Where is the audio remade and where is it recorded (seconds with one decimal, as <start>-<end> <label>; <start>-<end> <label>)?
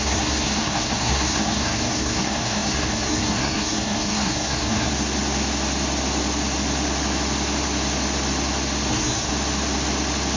0.0-4.9 remade; 4.9-8.9 recorded; 8.9-9.3 remade; 9.3-10.4 recorded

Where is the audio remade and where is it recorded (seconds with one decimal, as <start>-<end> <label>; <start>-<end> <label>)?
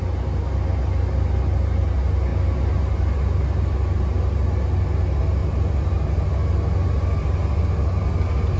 0.0-8.6 recorded